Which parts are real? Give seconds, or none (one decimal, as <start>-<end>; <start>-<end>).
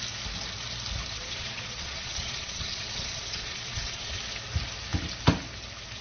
0.0-1.2; 4.1-6.0